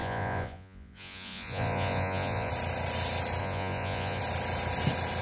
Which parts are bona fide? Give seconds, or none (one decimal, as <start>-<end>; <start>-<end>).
2.5-3.4; 4.2-5.2